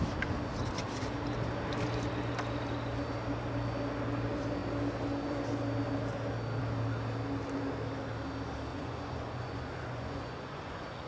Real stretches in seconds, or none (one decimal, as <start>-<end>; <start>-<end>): 0.0-8.7